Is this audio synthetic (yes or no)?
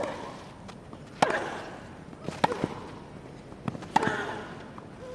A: no